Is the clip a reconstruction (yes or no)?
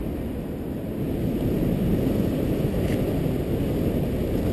no